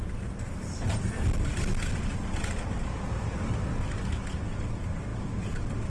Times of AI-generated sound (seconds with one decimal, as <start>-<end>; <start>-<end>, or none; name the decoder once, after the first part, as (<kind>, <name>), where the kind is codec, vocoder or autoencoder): none